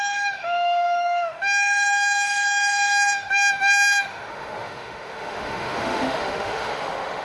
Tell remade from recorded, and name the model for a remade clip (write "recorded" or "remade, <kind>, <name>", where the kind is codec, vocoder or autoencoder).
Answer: remade, autoencoder, DAC-VAE